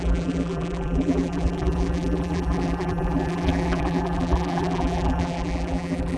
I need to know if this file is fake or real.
fake